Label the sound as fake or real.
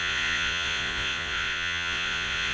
fake